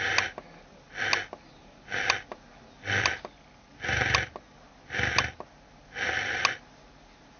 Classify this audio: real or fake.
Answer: real